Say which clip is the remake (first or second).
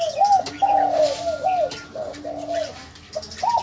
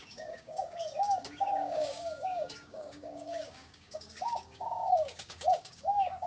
second